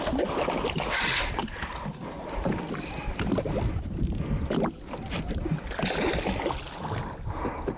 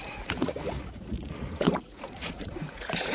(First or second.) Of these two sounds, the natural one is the first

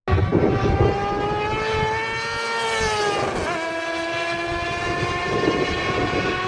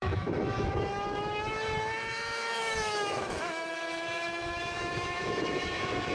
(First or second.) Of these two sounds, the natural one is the first